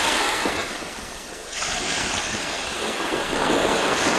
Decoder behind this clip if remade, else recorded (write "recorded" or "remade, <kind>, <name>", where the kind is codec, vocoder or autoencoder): remade, codec, SNAC